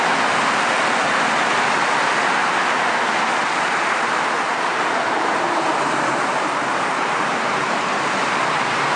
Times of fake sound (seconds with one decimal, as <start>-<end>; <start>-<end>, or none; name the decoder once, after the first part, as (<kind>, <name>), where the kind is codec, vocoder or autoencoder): 4.5-9.0 (vocoder, BigVGAN v2)